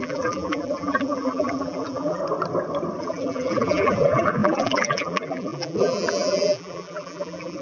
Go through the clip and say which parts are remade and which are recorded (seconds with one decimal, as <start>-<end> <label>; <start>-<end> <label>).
0.0-2.2 remade; 2.2-3.0 recorded; 3.0-7.6 remade